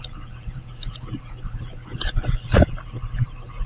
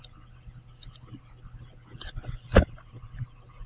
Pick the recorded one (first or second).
second